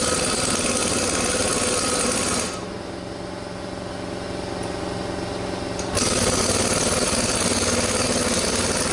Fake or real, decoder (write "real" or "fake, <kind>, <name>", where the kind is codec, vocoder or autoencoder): real